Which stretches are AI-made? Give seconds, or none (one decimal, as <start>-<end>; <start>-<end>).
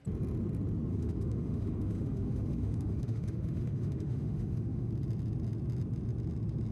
0.9-4.9